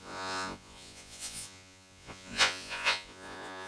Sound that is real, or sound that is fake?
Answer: fake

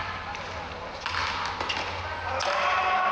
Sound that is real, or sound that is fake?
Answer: real